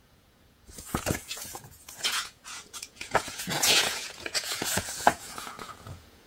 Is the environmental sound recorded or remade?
remade